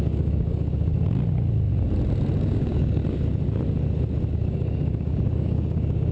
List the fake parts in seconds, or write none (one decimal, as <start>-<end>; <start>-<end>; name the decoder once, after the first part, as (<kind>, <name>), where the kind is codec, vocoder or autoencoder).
0.0-0.9 (codec, DAC); 2.4-3.0; 4.3-6.1